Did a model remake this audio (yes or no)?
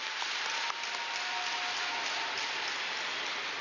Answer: no